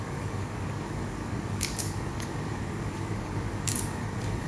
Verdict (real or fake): fake